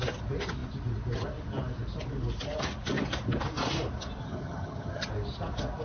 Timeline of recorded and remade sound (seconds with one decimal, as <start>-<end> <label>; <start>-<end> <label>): 0.0-4.2 recorded; 4.2-5.1 remade; 5.1-5.8 recorded